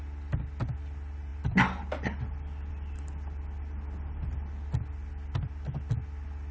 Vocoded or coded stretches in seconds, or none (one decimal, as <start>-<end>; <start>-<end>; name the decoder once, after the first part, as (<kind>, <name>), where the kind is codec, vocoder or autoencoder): none